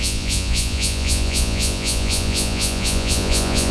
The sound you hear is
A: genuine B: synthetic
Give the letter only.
B